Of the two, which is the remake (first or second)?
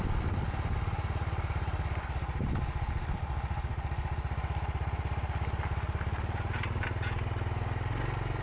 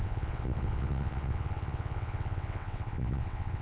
second